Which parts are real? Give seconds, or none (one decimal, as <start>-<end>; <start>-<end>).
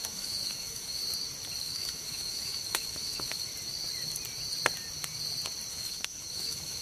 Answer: 1.0-1.6; 3.5-5.7